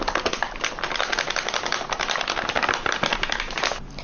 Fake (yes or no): no